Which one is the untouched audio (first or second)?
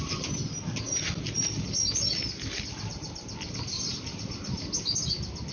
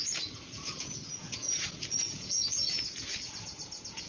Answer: first